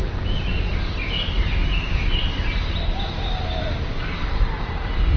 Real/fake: real